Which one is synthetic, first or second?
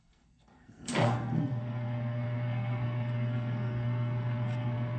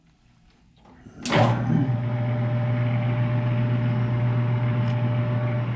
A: first